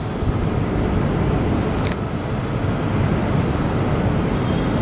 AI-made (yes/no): no